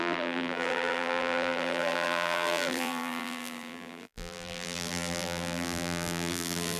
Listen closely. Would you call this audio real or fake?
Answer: fake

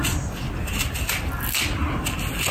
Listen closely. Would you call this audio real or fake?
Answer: real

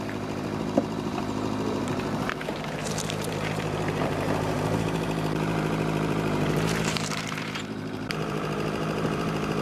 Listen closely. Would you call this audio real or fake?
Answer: fake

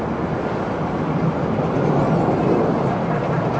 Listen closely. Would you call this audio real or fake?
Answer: real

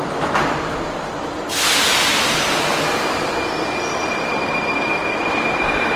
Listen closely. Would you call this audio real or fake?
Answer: fake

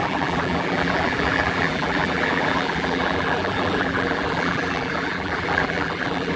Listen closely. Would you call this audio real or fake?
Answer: fake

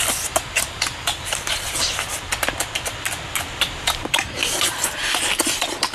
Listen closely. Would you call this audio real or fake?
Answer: fake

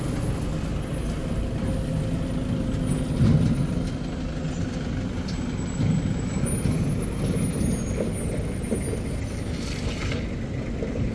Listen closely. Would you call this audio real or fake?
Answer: real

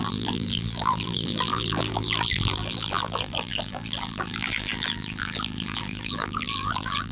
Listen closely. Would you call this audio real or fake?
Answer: fake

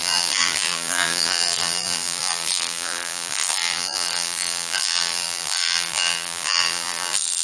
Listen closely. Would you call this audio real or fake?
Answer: fake